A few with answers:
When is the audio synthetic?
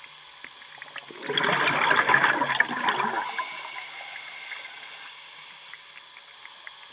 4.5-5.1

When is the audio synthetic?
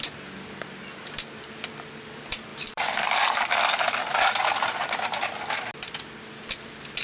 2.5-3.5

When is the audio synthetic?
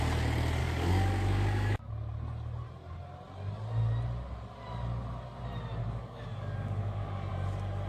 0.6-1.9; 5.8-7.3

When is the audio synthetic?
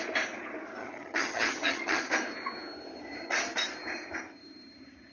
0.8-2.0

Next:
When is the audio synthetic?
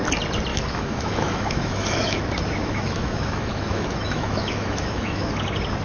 0.5-2.2; 2.6-5.3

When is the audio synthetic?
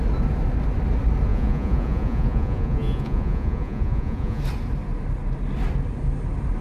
1.3-4.4